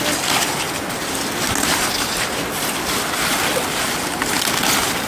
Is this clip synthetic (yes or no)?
no